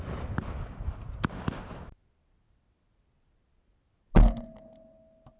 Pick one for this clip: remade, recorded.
recorded